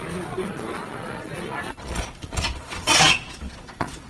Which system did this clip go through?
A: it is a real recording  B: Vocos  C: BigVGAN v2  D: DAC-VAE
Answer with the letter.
B